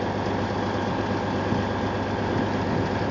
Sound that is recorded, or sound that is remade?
recorded